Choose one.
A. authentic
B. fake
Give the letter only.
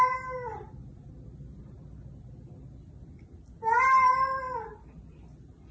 A